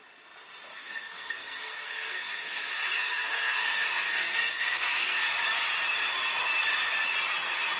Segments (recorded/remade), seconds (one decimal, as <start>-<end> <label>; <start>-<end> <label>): 0.0-0.7 recorded; 0.7-5.4 remade; 5.4-7.8 recorded